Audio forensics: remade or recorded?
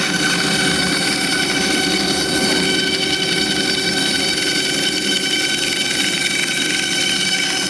recorded